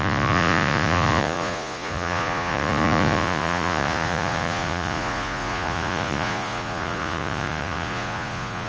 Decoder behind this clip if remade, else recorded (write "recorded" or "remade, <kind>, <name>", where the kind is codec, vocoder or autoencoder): remade, vocoder, Vocos